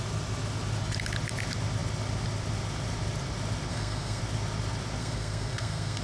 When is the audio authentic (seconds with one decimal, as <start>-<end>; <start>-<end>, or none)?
0.0-3.7; 4.2-5.0

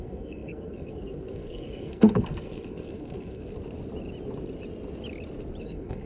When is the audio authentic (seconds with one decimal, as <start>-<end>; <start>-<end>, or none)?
3.4-5.6

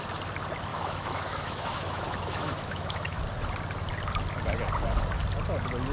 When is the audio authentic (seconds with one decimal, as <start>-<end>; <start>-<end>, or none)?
0.0-0.7; 3.2-5.9